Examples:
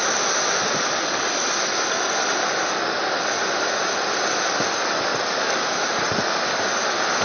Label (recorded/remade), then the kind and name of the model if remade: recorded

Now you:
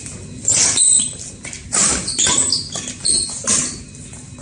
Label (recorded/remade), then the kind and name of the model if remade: recorded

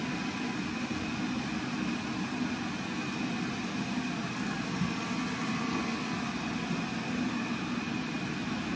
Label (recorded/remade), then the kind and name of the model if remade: recorded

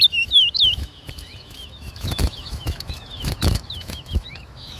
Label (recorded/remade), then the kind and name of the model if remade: remade, autoencoder, DAC-VAE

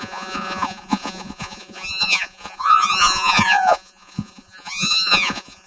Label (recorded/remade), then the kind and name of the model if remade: remade, vocoder, Vocos